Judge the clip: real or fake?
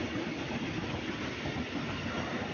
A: real